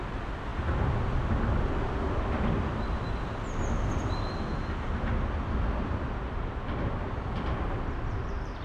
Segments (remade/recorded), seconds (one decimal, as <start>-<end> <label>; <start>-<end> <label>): 0.0-8.6 recorded